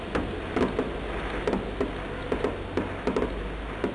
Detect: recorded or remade recorded